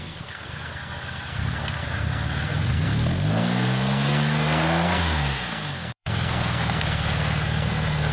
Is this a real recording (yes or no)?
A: no